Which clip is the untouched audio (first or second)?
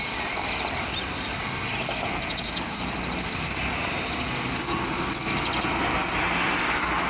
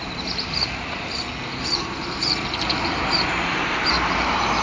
first